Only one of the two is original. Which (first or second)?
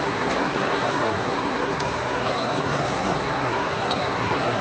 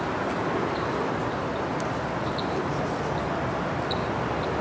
second